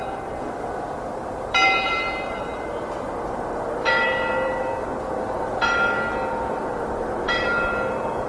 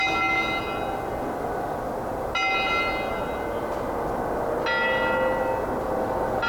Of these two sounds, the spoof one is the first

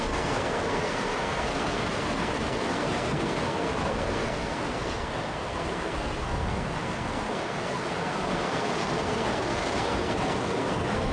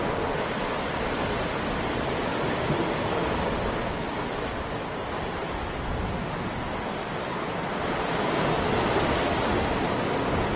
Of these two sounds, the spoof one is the first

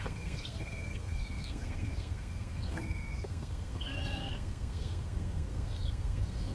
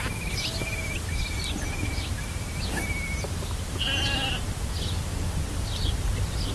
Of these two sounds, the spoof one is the first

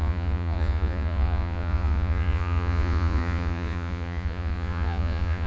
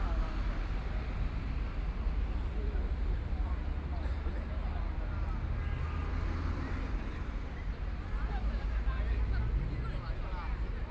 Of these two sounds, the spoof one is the first